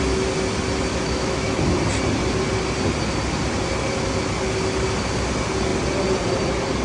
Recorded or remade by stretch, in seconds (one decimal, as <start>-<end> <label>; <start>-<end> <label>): 0.0-0.9 recorded; 0.9-1.6 remade; 1.6-6.8 recorded